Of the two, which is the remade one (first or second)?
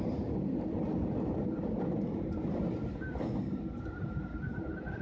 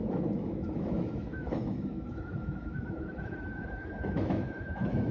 second